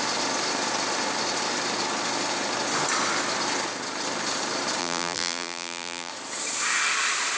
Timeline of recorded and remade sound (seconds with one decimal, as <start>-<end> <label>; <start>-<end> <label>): 0.0-4.8 recorded; 4.8-6.1 remade; 6.1-7.4 recorded